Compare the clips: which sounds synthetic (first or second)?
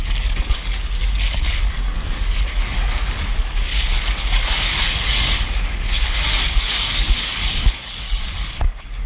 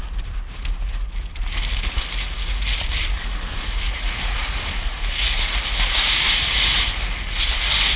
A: first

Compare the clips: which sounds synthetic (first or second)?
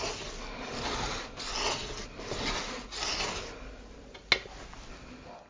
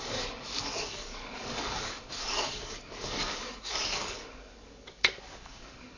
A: second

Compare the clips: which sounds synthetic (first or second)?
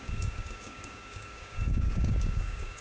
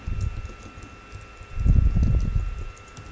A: first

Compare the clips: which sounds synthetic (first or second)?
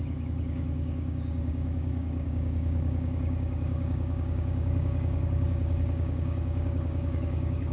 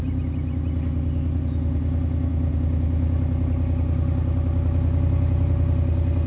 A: first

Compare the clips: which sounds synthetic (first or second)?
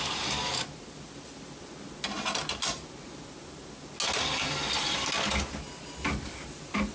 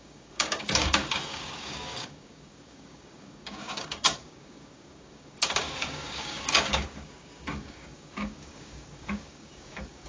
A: second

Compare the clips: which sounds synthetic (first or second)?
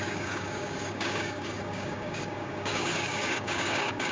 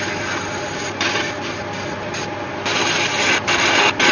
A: first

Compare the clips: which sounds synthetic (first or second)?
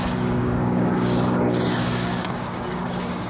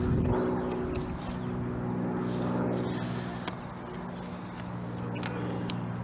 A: first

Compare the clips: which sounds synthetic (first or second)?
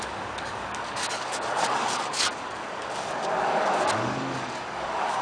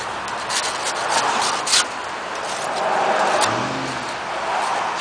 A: first